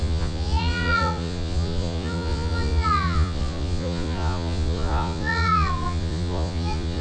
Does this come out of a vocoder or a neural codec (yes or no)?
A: yes